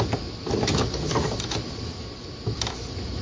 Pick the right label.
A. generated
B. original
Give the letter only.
B